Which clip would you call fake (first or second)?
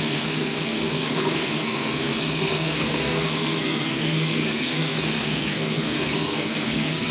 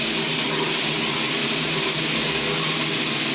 first